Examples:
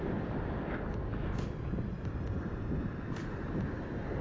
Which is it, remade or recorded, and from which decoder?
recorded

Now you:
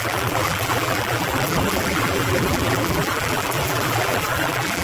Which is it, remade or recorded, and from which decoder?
remade, vocoder, BigVGAN v2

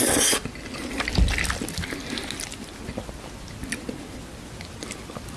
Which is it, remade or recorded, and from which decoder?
recorded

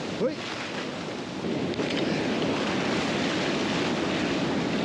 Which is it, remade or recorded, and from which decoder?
recorded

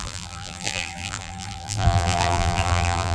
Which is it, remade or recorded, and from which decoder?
remade, vocoder, BigVGAN v2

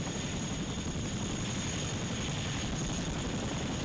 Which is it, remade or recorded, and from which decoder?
recorded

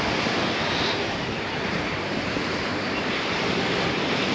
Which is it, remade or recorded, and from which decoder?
remade, vocoder, BigVGAN v2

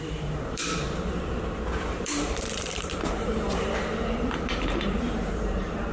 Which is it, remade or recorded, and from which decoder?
remade, vocoder, BigVGAN v2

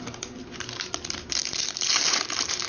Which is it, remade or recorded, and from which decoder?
remade, vocoder, BigVGAN v2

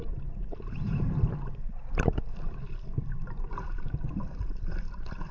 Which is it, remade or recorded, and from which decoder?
recorded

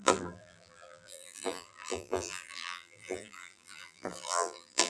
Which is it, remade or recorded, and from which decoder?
remade, vocoder, BigVGAN v2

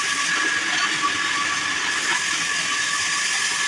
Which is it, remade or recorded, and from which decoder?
recorded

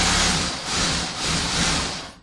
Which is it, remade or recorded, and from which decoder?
remade, vocoder, BigVGAN v2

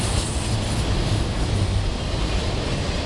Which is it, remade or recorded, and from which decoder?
remade, vocoder, BigVGAN v2